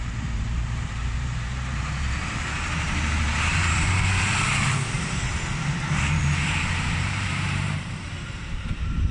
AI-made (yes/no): yes